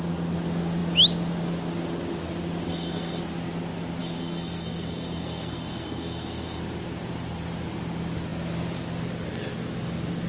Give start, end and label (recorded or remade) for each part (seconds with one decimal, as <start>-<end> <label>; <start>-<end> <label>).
0.0-2.7 recorded; 2.7-3.2 remade; 3.2-4.0 recorded; 4.0-6.6 remade; 6.6-10.3 recorded